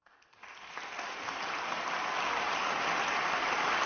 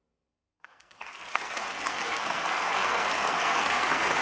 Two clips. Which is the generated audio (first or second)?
second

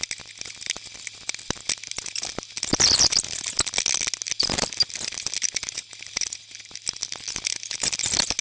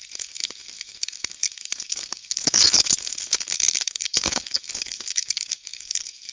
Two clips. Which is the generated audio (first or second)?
second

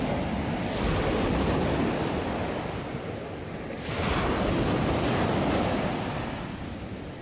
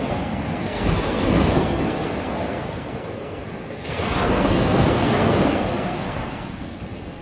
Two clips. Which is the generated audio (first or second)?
second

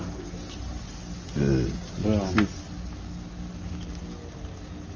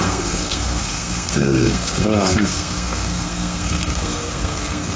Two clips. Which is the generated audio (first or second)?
second